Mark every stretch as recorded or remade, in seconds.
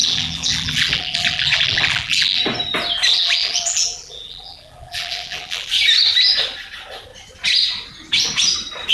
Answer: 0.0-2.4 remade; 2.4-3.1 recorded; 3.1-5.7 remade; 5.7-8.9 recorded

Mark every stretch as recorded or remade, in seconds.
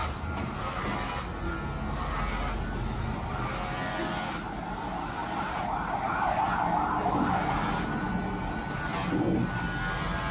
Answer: 0.0-1.1 remade; 1.1-10.3 recorded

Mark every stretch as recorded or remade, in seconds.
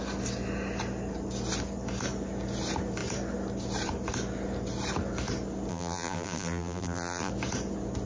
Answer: 0.0-5.7 recorded; 5.7-7.3 remade; 7.3-8.1 recorded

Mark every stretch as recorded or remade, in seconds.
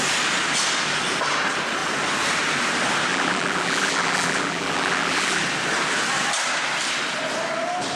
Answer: 0.0-3.1 recorded; 3.1-5.4 remade; 5.4-8.0 recorded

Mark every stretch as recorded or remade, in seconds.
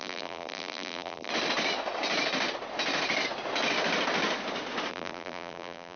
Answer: 0.0-1.3 remade; 1.3-4.9 recorded; 4.9-6.0 remade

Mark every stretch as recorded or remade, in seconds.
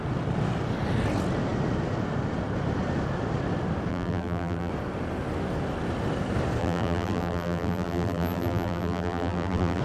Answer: 0.0-3.9 recorded; 3.9-4.7 remade; 4.7-6.6 recorded; 6.6-9.8 remade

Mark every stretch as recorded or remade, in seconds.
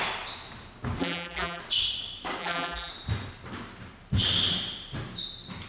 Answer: 0.0-1.0 recorded; 1.0-1.6 remade; 1.6-2.4 recorded; 2.4-2.9 remade; 2.9-5.7 recorded